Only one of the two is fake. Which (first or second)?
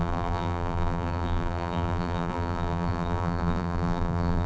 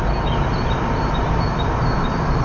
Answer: first